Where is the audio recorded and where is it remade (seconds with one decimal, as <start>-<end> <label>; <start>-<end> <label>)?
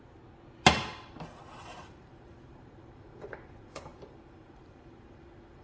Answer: 0.0-1.6 recorded; 1.6-5.6 remade